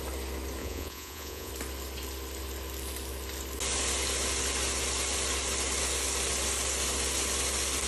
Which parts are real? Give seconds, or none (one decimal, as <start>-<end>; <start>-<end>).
0.0-0.6; 1.5-7.9